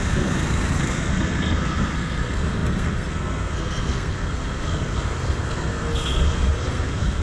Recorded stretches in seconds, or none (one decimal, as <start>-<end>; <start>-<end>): none